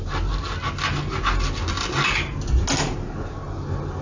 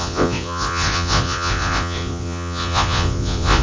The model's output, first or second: second